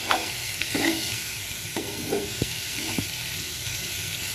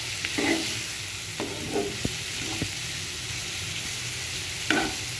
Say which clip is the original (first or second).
second